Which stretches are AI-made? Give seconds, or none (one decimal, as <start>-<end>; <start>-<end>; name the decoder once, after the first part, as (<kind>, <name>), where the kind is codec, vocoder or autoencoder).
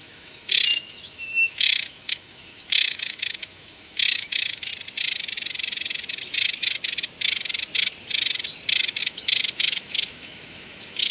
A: 0.0-4.7 (autoencoder, DAC-VAE); 9.0-11.1